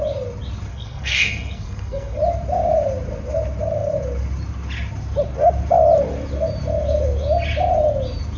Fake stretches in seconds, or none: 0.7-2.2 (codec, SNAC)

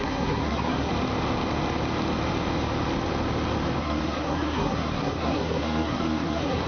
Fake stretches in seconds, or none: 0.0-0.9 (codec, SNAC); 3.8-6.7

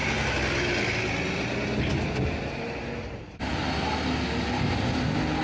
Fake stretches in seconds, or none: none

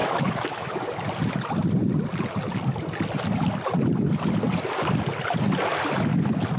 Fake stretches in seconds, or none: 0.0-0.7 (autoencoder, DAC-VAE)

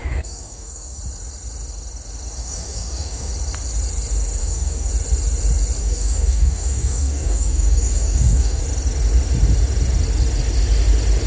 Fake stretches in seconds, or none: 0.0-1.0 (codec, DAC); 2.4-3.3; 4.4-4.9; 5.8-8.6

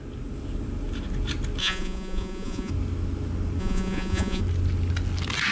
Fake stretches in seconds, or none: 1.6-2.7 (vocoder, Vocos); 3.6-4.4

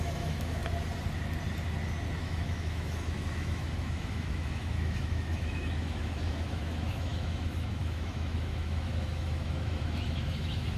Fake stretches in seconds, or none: 0.0-0.6 (autoencoder, DAC-VAE); 2.2-10.8

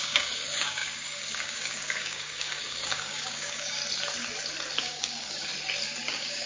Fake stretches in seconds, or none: 0.0-3.8 (codec, DAC); 4.8-5.5; 6.1-6.5